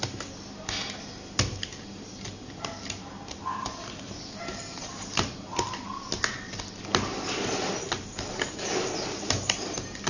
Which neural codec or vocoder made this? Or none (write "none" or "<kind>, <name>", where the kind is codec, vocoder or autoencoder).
none